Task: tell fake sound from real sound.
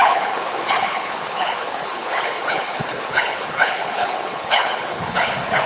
fake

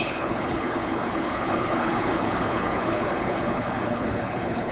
fake